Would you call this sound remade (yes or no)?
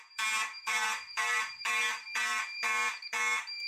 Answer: yes